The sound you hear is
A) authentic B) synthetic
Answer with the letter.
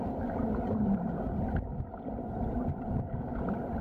A